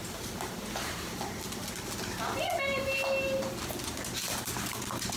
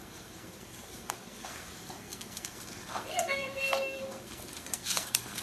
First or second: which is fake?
second